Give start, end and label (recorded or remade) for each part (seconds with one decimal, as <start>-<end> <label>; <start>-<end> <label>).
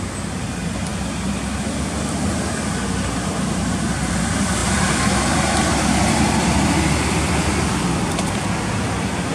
0.0-9.3 recorded